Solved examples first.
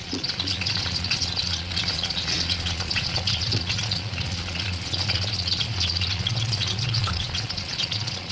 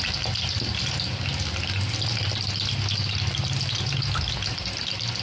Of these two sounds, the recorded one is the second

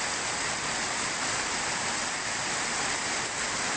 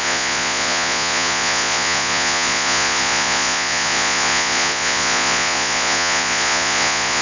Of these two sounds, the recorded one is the first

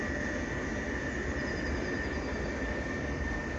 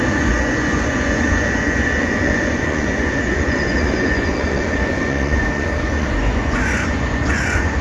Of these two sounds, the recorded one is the first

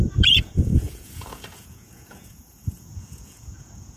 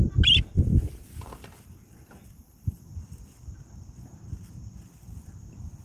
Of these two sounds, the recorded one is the second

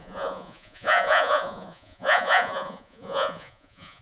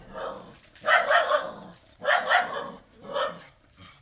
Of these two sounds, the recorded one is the second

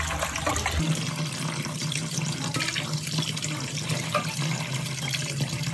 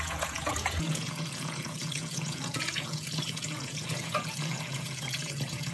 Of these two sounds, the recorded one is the first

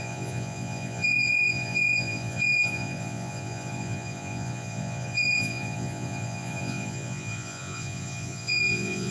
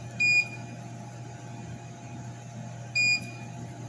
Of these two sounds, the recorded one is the second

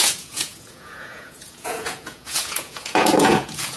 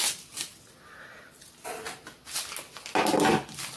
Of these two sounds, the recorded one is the second